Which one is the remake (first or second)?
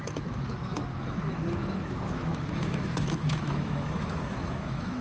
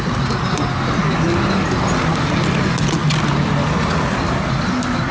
first